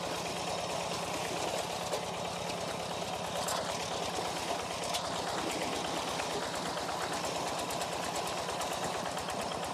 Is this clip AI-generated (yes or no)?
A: no